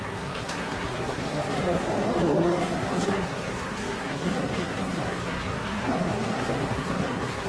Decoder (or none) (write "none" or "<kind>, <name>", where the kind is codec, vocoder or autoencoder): codec, SNAC